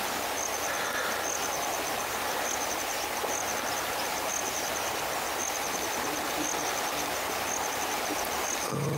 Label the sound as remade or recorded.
recorded